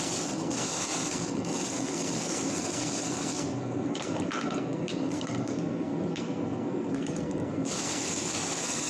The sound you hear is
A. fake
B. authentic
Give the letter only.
A